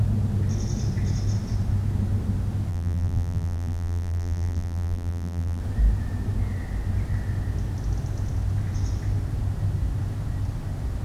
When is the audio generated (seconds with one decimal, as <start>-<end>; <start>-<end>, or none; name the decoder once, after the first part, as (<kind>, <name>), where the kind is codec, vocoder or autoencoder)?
2.7-5.6 (vocoder, BigVGAN v2)